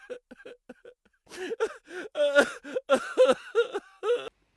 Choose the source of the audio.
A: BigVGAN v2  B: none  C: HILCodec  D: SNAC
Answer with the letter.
B